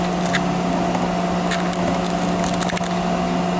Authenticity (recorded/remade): recorded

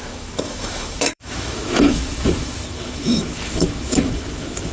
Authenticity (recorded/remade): remade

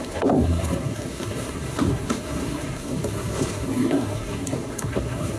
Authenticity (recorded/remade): remade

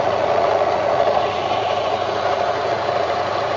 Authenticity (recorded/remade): remade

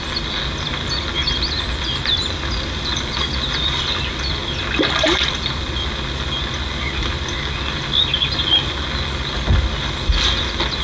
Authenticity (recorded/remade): recorded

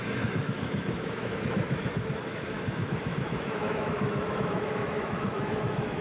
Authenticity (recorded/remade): remade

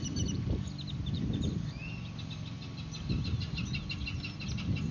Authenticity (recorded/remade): recorded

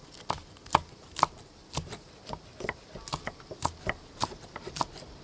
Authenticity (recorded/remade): recorded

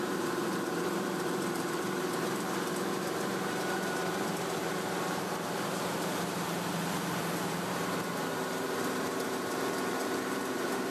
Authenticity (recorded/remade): remade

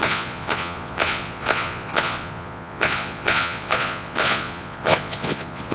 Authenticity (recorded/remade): remade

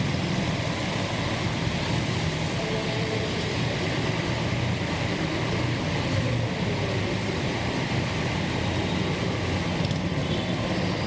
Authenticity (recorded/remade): recorded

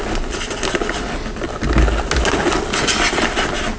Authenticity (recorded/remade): recorded